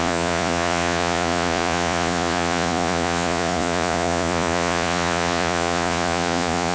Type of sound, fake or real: fake